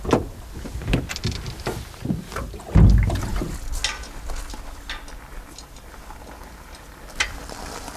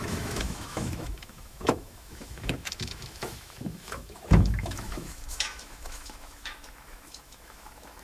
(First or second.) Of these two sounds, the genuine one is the first